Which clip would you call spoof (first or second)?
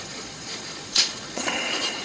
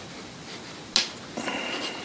first